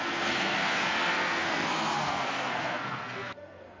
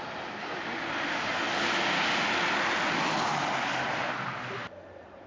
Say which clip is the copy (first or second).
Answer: first